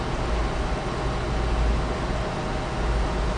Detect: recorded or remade recorded